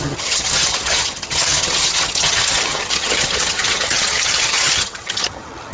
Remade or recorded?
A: remade